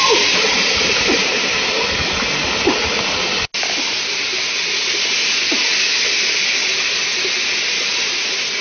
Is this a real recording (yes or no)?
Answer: yes